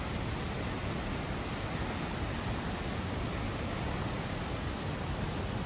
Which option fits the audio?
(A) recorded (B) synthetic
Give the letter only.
A